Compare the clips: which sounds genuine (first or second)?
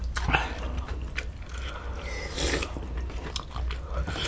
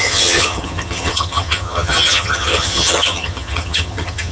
first